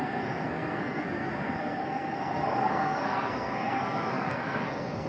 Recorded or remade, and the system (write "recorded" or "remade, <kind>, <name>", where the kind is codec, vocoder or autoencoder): remade, codec, SNAC